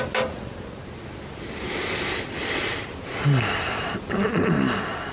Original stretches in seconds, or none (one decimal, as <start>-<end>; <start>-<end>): 0.0-5.1